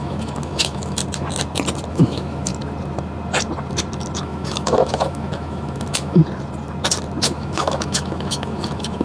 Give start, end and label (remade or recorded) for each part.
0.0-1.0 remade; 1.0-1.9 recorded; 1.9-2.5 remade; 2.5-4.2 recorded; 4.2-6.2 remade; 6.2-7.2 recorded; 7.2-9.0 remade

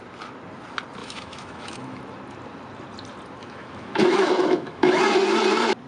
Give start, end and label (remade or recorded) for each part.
0.0-1.0 recorded; 1.0-2.0 remade; 2.0-3.4 recorded; 3.4-5.0 remade; 5.0-5.9 recorded

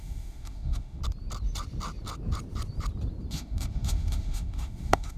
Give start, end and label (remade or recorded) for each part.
0.0-1.0 remade; 1.0-3.3 recorded; 3.3-5.2 remade

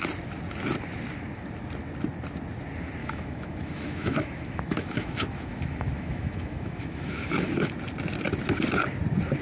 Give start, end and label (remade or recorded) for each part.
0.0-3.0 recorded; 3.0-7.7 remade; 7.7-9.4 recorded

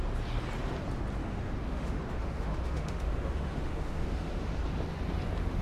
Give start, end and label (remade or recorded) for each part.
0.0-1.2 recorded; 1.2-4.6 remade; 4.6-5.6 recorded

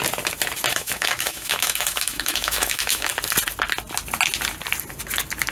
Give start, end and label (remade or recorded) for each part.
0.0-0.7 recorded; 0.7-3.1 remade; 3.1-5.5 recorded